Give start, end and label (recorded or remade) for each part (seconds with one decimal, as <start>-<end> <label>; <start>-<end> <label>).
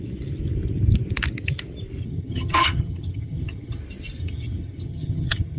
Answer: 0.0-2.0 recorded; 2.0-3.8 remade; 3.8-4.2 recorded; 4.2-5.6 remade